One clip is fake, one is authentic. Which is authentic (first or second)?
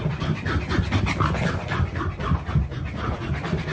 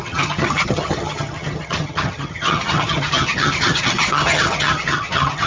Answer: first